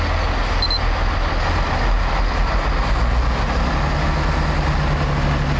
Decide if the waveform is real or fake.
real